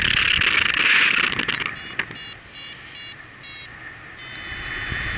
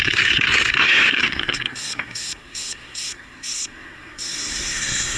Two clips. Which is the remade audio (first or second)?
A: second